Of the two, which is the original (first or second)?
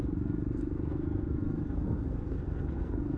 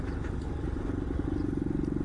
second